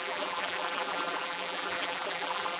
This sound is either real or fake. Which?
fake